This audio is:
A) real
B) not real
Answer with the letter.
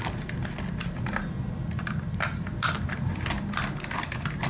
A